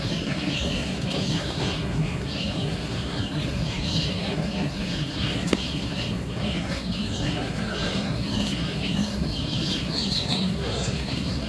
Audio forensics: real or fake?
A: fake